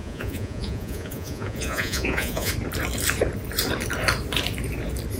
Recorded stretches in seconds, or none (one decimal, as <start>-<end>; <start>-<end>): 2.5-5.2